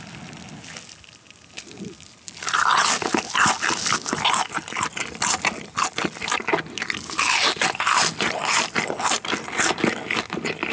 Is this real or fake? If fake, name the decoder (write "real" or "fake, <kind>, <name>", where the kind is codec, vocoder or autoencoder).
real